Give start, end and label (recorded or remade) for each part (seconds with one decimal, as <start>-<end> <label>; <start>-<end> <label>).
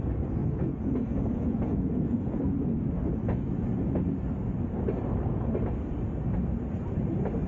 0.0-0.4 recorded; 0.4-2.4 remade; 2.4-7.5 recorded